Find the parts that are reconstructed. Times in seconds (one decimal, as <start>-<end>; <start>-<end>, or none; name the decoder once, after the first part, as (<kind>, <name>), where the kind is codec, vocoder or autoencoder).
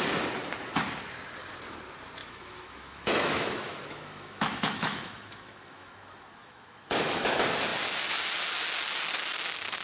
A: 2.2-7.3 (autoencoder, DAC-VAE)